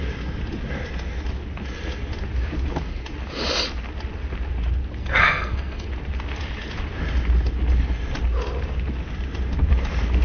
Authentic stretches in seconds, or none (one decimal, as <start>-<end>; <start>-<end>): 0.0-5.0; 5.9-10.2